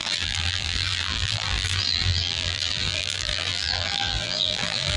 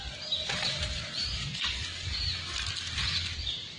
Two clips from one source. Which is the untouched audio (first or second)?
second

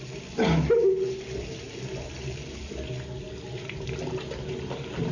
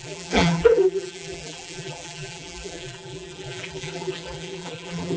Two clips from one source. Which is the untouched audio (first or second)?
first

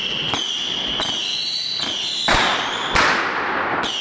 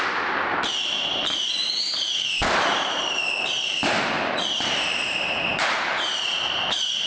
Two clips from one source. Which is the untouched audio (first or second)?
first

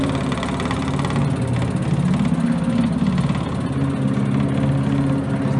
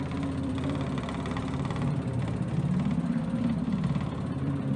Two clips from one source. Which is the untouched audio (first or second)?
first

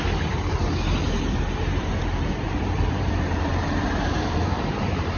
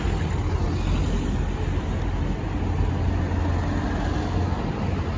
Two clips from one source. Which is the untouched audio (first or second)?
second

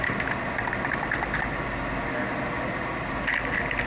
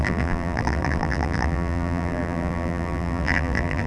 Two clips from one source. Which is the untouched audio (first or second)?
first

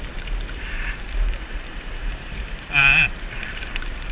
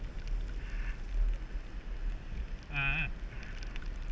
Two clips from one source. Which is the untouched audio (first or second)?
second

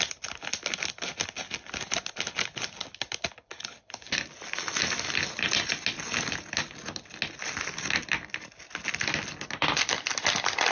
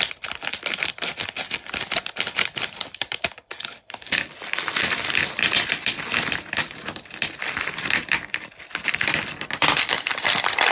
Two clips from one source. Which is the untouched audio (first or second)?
first